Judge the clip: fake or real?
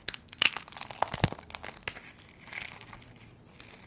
real